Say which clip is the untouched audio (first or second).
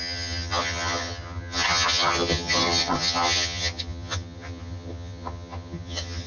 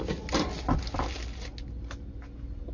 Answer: second